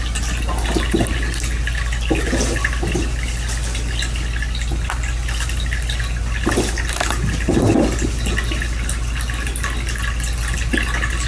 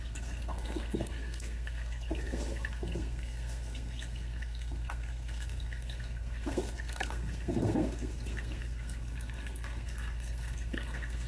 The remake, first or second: second